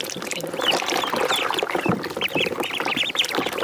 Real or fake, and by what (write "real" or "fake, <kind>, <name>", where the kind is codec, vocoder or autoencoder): fake, vocoder, BigVGAN v2